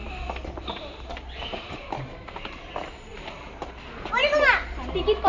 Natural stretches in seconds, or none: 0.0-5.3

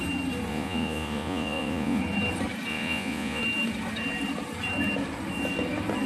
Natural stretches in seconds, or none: 0.0-0.5; 2.0-2.7; 3.4-6.1

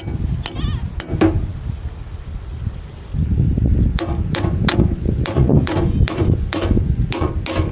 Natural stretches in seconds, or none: 0.0-3.9; 7.3-7.7

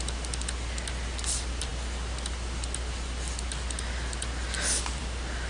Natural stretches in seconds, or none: 0.0-5.5

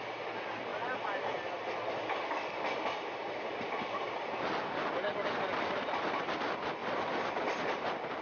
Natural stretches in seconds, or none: 0.0-8.2

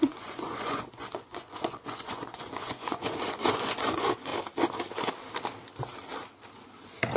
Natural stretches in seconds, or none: 4.3-6.8

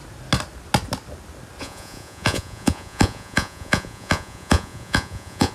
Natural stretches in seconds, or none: 0.0-1.6